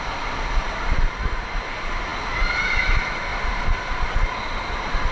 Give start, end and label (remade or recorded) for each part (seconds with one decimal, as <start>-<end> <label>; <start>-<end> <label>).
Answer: 0.0-3.3 recorded; 3.3-3.9 remade; 3.9-5.1 recorded